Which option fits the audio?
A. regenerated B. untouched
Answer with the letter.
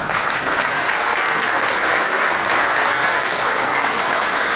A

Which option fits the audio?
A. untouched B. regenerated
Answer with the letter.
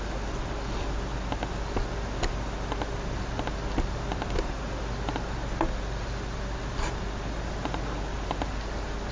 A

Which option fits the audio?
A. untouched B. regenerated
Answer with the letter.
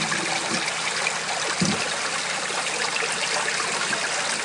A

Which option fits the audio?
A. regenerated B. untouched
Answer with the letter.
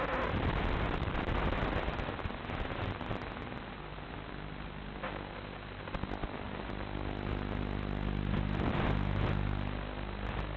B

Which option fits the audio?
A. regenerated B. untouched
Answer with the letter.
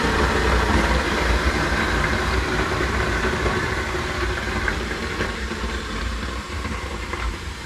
A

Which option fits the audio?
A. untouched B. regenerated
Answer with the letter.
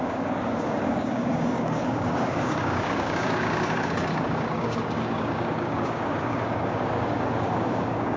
B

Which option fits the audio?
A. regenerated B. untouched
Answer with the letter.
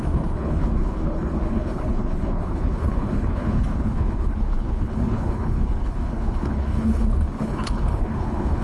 A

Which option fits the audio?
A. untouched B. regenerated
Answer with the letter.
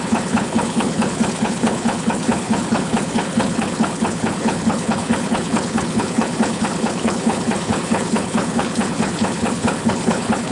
B